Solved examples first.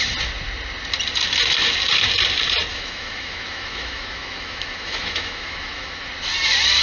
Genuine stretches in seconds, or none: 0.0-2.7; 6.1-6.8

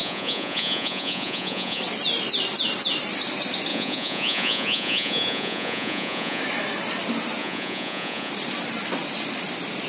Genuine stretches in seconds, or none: 1.8-3.7; 6.4-7.4; 8.3-9.9

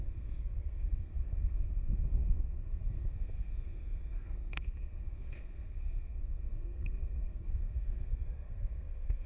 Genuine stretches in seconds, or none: none

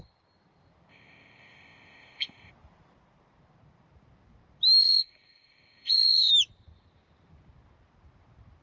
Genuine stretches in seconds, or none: 0.0-0.9; 2.5-4.8; 6.3-8.6

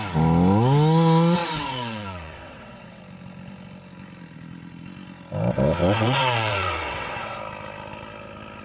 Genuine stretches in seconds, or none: 0.0-1.4; 3.0-5.8; 7.4-8.6

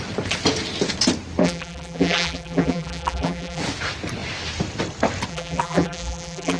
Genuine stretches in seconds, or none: 0.0-1.4; 3.6-5.3

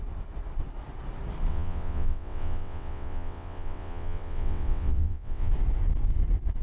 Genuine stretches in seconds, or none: 0.0-1.5; 5.5-6.6